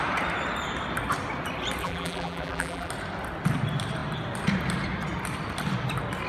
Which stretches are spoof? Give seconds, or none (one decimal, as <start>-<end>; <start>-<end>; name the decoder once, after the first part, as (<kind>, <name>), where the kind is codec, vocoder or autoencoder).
1.8-2.9 (vocoder, BigVGAN v2)